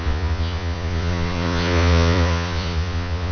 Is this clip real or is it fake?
fake